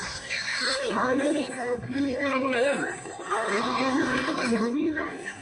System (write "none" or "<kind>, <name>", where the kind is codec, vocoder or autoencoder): codec, SNAC